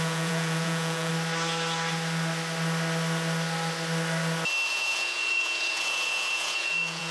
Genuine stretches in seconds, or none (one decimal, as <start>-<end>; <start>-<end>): 1.1-4.7